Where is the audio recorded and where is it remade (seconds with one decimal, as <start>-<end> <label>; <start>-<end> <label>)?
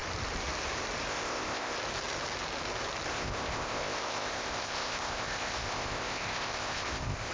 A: 0.0-1.1 recorded; 1.1-1.8 remade; 1.8-3.1 recorded; 3.1-7.3 remade